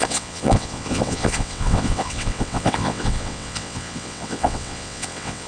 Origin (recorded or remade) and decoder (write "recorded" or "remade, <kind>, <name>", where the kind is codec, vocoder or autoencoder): remade, vocoder, WaveNeXt